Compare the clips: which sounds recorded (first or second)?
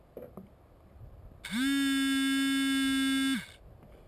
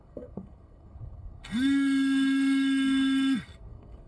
first